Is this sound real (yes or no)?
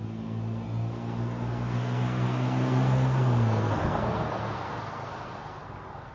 no